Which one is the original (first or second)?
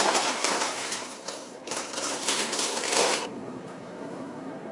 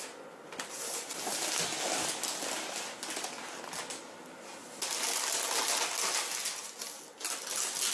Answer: second